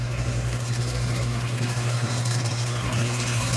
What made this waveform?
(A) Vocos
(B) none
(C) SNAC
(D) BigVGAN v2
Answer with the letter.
C